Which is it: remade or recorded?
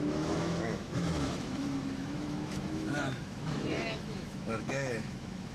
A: remade